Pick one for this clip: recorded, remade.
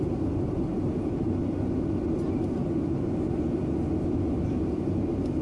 recorded